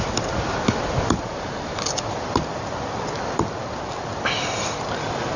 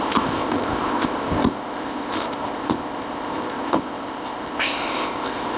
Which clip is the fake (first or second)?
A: second